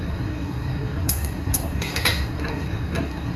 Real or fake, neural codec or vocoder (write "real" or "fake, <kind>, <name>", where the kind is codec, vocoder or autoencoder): fake, codec, SNAC